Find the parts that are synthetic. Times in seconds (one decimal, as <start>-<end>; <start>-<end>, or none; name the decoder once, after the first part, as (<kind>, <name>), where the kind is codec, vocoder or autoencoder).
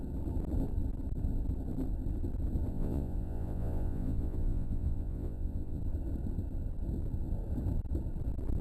2.7-5.8 (vocoder, Vocos)